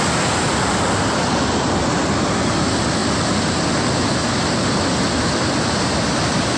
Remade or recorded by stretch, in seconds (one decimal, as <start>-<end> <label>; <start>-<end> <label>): 0.0-6.6 recorded